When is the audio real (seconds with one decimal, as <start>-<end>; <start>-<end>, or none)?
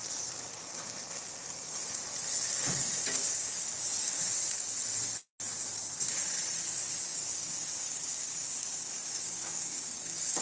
0.0-3.0; 4.2-7.1